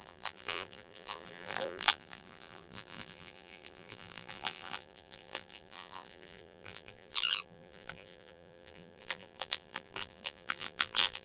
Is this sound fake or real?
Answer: fake